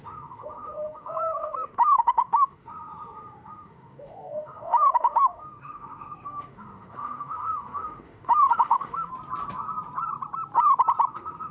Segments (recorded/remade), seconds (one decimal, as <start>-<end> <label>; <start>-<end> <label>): 0.0-9.1 remade; 9.1-11.1 recorded; 11.1-11.5 remade